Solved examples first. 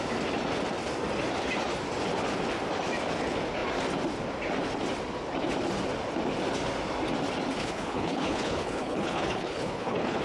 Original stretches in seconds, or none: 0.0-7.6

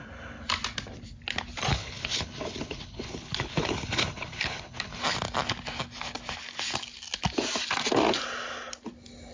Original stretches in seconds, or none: 0.0-1.7; 5.0-9.3